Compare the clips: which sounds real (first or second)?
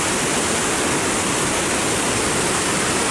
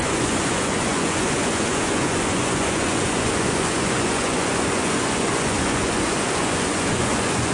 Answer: first